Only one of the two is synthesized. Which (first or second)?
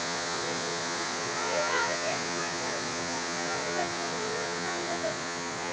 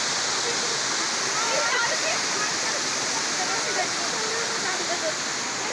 first